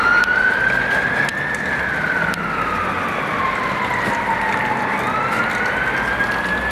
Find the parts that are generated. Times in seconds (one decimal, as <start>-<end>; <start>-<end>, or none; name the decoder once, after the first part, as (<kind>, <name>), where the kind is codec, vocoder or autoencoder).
none